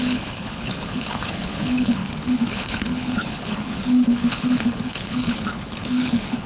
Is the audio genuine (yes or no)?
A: no